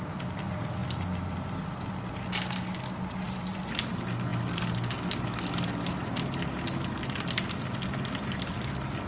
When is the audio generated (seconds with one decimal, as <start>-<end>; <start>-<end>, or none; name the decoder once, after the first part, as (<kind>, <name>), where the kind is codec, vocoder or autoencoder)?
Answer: none

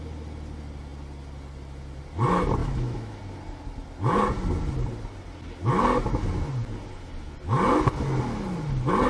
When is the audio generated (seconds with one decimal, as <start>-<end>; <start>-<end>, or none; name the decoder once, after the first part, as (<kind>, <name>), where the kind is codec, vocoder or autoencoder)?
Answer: 2.6-3.2 (autoencoder, DAC-VAE)

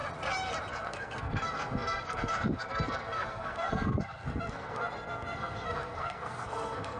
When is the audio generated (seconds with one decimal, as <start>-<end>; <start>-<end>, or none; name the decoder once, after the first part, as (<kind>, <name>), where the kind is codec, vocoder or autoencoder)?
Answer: 0.7-7.0 (codec, SNAC)

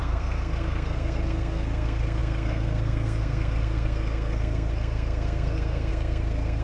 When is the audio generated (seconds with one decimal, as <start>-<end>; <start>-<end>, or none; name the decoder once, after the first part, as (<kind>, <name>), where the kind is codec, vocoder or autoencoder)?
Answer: 0.0-6.6 (codec, SNAC)

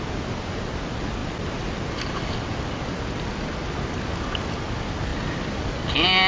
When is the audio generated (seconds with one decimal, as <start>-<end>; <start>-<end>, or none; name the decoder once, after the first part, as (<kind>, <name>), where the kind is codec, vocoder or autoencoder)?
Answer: none